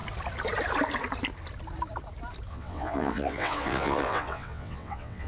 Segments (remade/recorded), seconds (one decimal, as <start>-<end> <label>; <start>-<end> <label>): 0.0-2.5 recorded; 2.5-5.3 remade